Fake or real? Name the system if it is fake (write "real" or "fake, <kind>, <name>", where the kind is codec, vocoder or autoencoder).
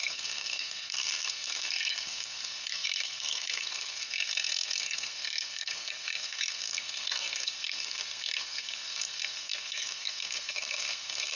fake, codec, SNAC